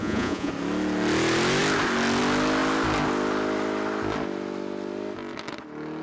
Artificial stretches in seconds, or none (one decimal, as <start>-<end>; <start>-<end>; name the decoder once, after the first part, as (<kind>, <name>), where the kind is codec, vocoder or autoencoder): 0.0-0.5 (vocoder, Vocos)